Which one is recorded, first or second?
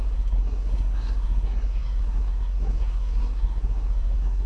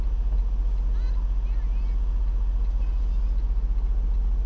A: second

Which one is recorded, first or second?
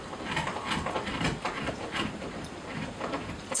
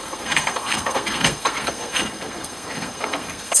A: first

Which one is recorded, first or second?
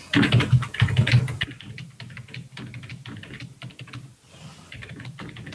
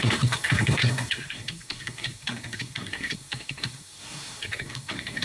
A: first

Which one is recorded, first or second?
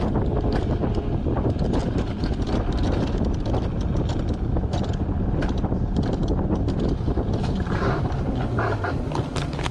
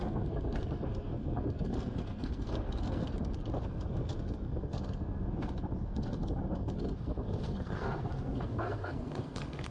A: first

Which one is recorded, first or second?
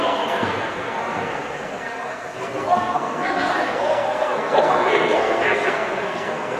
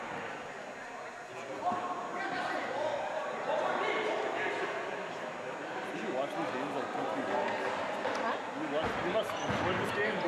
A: second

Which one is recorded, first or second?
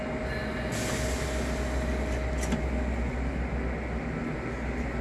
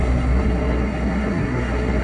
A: first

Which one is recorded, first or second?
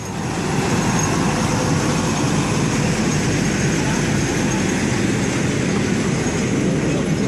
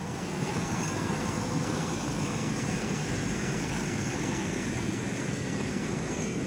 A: first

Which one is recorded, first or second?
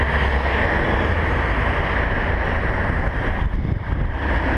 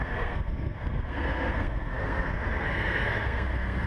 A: first